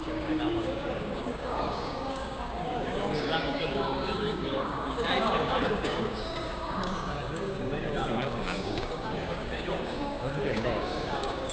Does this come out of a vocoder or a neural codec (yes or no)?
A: yes